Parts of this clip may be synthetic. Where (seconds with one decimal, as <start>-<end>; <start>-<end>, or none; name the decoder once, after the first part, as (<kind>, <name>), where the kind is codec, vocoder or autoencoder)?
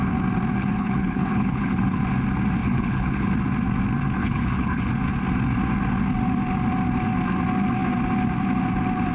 0.6-2.0 (codec, HILCodec); 2.6-3.3; 4.2-4.9